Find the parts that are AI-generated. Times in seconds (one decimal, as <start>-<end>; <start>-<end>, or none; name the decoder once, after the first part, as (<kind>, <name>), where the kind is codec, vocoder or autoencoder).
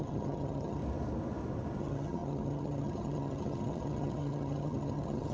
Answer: 0.0-0.8 (vocoder, HiFi-GAN); 1.8-5.3